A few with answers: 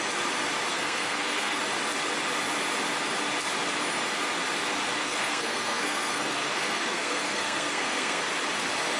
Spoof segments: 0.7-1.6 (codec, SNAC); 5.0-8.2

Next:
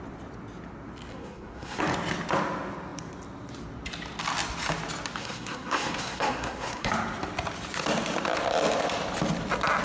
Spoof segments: 1.1-1.8 (codec, SNAC); 5.2-6.9

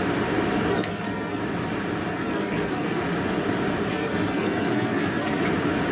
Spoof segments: 0.7-1.4 (codec, SNAC); 2.1-3.0; 3.9-5.4

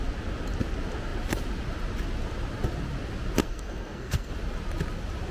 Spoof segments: 3.4-4.3 (codec, SNAC)

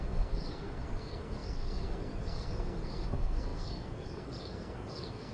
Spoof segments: 0.0-5.3 (codec, SNAC)